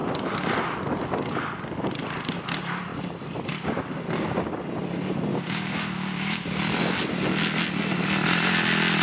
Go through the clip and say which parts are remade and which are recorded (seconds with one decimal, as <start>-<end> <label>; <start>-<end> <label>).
0.0-5.3 recorded; 5.3-6.6 remade; 6.6-9.0 recorded